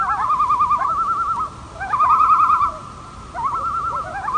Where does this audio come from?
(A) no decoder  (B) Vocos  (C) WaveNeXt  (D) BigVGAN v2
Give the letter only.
A